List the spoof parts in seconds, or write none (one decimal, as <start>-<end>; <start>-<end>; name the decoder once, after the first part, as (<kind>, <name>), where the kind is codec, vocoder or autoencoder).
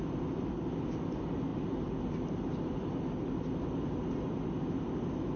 none